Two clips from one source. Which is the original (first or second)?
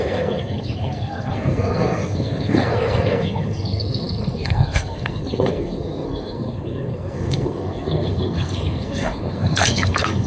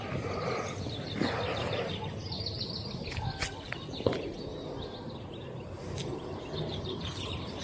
second